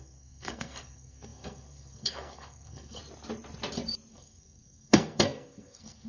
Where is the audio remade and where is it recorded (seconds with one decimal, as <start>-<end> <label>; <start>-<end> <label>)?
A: 0.0-3.0 remade; 3.0-4.1 recorded; 4.1-6.1 remade

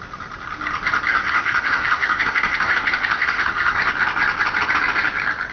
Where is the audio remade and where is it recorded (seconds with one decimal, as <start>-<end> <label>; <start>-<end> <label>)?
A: 0.0-1.1 recorded; 1.1-3.9 remade; 3.9-5.5 recorded

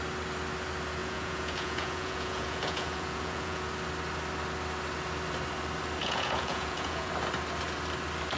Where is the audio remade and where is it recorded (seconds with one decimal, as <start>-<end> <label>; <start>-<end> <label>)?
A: 0.0-1.0 recorded; 1.0-3.6 remade; 3.6-6.0 recorded; 6.0-7.1 remade; 7.1-8.4 recorded

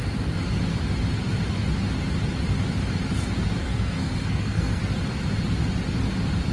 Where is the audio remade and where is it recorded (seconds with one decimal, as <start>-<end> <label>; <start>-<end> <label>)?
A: 0.0-3.6 recorded; 3.6-4.8 remade; 4.8-6.5 recorded

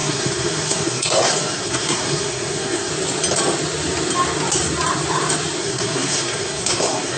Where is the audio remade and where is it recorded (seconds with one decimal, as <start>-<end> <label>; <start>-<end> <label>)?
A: 0.0-2.9 remade; 2.9-5.6 recorded; 5.6-7.2 remade

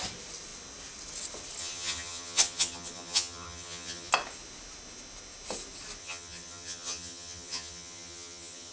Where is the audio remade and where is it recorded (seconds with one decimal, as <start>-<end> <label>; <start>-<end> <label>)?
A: 0.0-1.6 recorded; 1.6-4.1 remade; 4.1-6.0 recorded; 6.0-8.7 remade

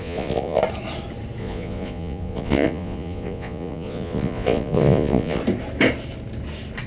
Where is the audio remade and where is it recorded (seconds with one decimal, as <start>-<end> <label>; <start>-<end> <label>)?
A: 0.0-0.6 remade; 0.6-1.4 recorded; 1.4-5.4 remade; 5.4-6.9 recorded

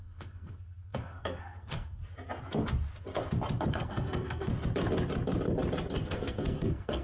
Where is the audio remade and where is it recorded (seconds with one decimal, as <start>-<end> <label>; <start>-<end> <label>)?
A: 0.0-2.0 remade; 2.0-3.7 recorded; 3.7-4.5 remade; 4.5-6.0 recorded; 6.0-7.0 remade